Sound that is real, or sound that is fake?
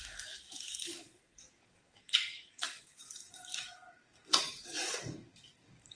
fake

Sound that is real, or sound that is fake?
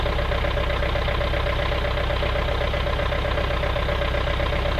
real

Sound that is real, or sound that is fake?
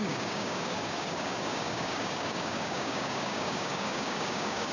fake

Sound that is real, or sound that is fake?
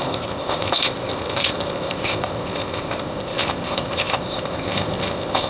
fake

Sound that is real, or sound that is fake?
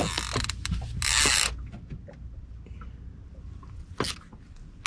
real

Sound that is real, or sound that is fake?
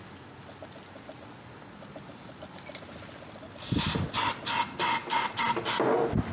real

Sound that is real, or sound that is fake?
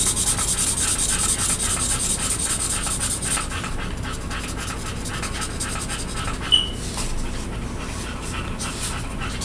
real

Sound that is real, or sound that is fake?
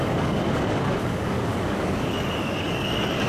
fake